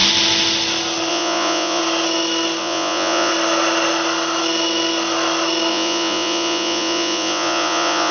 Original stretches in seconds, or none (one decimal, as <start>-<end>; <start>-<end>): 0.0-1.1; 1.8-2.6; 3.3-5.7